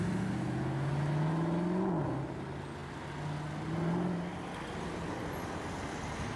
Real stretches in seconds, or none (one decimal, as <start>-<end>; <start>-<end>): 0.0-6.4